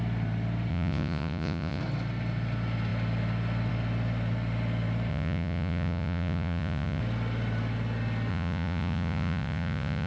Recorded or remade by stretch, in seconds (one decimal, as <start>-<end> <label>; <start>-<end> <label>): 0.0-0.7 recorded; 0.7-1.8 remade; 1.8-5.1 recorded; 5.1-7.0 remade; 7.0-8.3 recorded; 8.3-10.1 remade

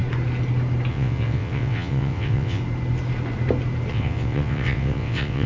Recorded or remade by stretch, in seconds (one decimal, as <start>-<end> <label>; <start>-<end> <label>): 0.0-0.9 recorded; 0.9-2.6 remade; 2.6-3.9 recorded; 3.9-5.5 remade

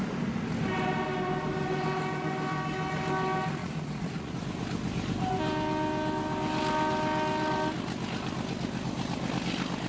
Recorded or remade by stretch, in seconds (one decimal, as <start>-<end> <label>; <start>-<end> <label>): 0.0-3.6 recorded; 3.6-4.3 remade; 4.3-9.9 recorded